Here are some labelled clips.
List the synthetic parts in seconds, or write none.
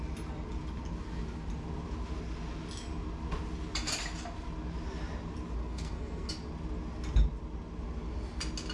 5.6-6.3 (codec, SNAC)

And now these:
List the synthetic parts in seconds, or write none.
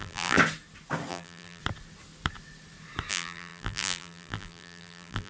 0.0-0.4 (vocoder, BigVGAN v2); 1.1-1.6; 3.1-5.3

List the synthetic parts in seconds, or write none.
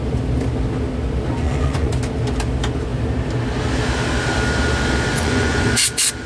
1.4-1.9 (vocoder, Vocos); 5.1-5.8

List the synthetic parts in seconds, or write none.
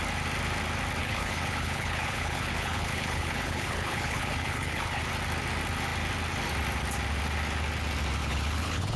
1.0-5.0 (codec, HILCodec); 8.2-9.0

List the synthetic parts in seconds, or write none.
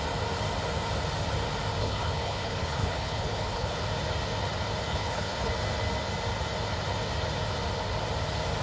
1.8-3.8 (codec, HILCodec); 4.9-5.5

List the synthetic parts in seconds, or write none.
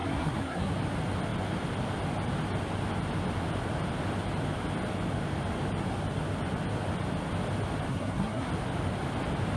0.0-0.7 (codec, SNAC); 7.9-8.5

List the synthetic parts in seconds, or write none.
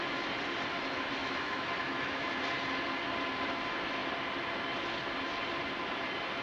1.2-2.3 (autoencoder, DAC-VAE)